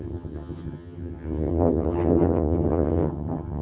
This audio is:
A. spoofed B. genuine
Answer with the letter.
A